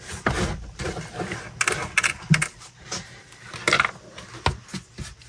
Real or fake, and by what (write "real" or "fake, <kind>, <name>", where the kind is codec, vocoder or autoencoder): real